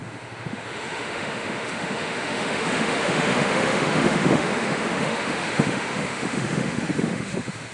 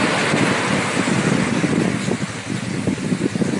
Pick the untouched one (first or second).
second